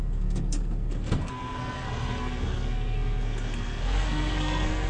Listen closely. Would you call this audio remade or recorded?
remade